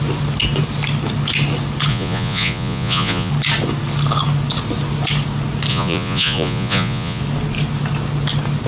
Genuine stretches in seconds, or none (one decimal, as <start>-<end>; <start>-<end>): 0.0-1.9; 3.3-5.7; 7.2-8.7